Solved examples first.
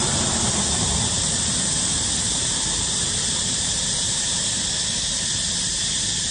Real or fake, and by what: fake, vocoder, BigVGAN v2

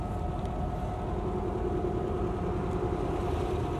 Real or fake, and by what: real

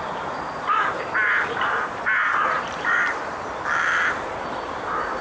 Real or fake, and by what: real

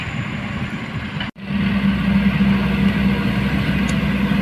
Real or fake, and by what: real